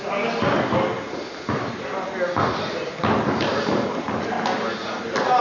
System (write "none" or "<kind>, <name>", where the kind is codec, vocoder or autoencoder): none